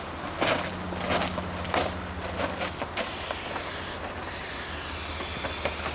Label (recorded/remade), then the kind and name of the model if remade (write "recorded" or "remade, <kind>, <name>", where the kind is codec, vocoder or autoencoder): recorded